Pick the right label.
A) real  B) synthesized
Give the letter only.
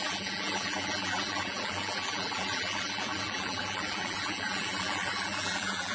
B